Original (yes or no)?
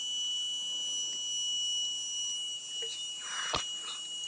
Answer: yes